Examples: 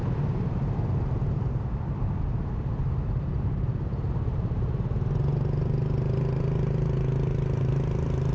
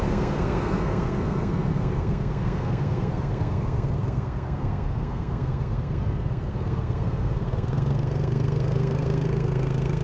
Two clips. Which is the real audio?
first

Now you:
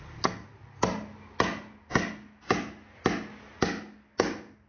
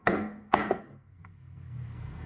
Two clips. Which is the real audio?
first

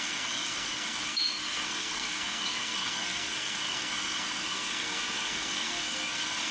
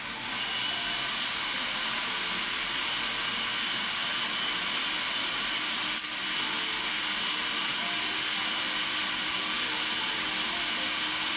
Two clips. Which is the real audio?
second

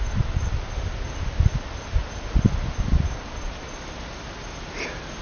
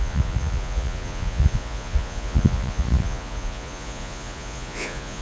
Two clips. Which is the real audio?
first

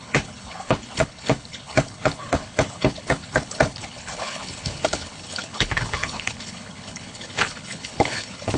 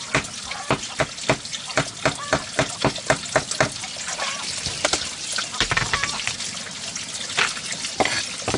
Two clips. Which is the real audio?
second